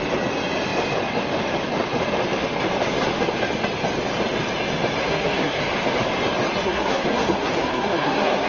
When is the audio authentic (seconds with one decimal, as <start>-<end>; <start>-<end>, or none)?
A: 0.0-5.0; 5.6-6.6